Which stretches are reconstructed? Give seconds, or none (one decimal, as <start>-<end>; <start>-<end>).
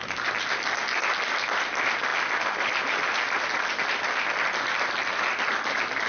none